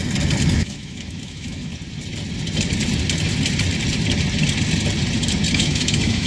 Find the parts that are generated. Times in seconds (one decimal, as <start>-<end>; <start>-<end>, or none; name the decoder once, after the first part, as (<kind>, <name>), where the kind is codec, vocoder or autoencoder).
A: 0.5-1.7 (autoencoder, DAC-VAE); 5.5-6.3